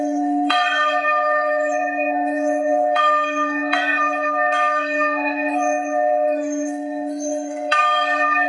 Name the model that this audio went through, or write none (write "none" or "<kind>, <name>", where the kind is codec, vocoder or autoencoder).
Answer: codec, SNAC